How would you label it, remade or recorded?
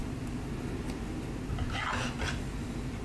recorded